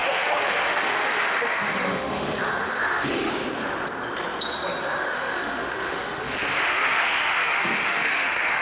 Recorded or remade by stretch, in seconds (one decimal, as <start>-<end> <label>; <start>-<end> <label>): 0.0-3.3 remade; 3.3-5.0 recorded; 5.0-8.6 remade